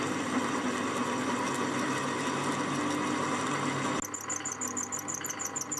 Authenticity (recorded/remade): recorded